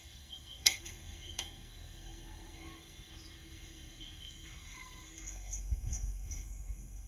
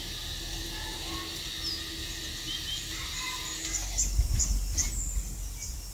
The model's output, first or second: first